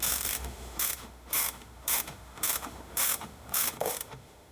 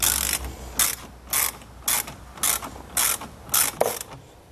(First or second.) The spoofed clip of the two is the first